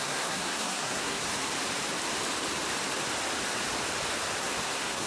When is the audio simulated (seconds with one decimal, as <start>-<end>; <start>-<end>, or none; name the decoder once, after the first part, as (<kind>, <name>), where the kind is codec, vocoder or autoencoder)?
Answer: 0.0-1.3 (codec, SNAC); 4.4-5.1